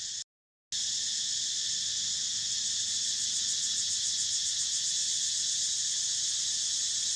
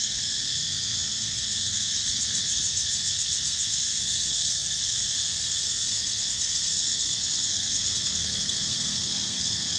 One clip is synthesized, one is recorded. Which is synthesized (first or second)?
second